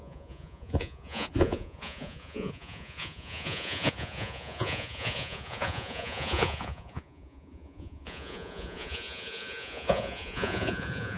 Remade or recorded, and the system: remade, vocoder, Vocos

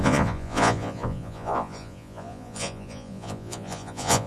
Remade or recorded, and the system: remade, vocoder, Vocos